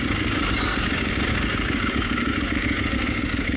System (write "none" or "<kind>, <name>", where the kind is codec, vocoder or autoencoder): codec, DAC